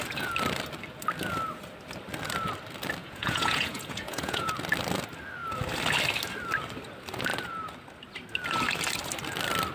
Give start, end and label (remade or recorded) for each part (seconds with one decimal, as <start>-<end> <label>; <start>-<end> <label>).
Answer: 0.0-3.0 recorded; 3.0-4.5 remade; 4.5-9.7 recorded